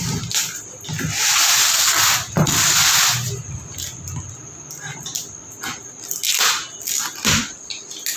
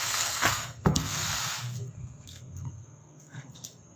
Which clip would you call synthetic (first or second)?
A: second